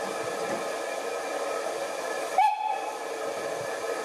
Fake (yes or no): no